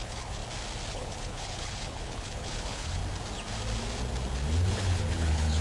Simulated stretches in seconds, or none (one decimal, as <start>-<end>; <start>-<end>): 0.0-0.4; 0.9-3.0; 4.7-5.6